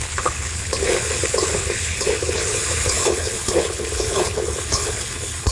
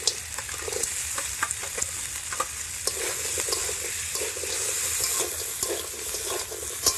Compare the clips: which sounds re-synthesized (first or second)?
first